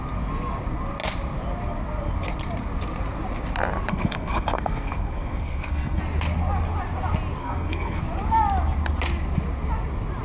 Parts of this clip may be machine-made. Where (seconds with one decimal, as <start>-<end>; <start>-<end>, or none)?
3.9-6.0; 7.4-8.0